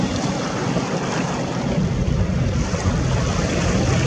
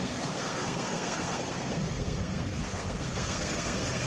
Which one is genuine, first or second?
first